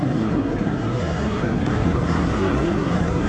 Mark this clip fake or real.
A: fake